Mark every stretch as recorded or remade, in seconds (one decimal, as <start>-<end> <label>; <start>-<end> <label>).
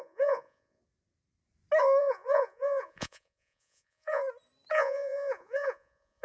0.0-0.8 remade; 0.8-2.0 recorded; 2.0-4.2 remade; 4.2-4.7 recorded; 4.7-6.2 remade